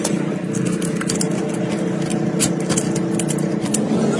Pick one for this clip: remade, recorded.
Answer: recorded